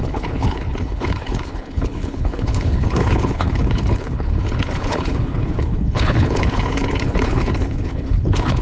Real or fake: fake